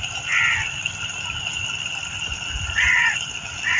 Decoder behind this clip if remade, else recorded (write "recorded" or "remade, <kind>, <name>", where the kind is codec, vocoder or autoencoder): recorded